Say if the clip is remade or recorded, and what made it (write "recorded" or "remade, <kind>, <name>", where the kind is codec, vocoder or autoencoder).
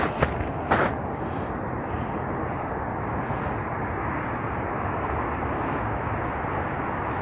recorded